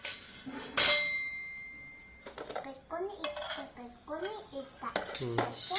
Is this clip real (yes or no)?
yes